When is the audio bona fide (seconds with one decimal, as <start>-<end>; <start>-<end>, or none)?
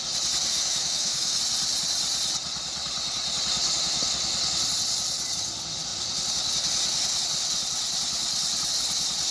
0.0-0.5; 1.4-9.3